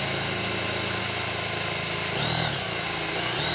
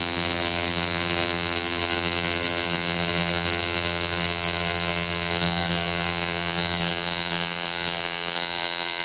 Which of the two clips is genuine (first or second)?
first